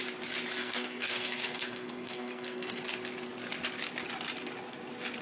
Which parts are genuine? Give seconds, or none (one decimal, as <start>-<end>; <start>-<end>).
0.0-0.6; 2.8-5.2